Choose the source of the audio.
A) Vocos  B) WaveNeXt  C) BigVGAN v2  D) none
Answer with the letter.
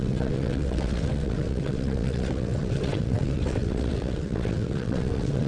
B